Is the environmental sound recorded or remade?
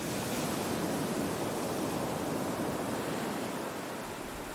recorded